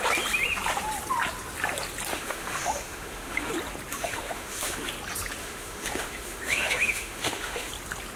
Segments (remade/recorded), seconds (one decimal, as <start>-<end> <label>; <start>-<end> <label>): 0.0-2.1 recorded; 2.1-3.5 remade; 3.5-3.9 recorded; 3.9-4.9 remade; 4.9-5.4 recorded; 5.4-7.7 remade; 7.7-8.2 recorded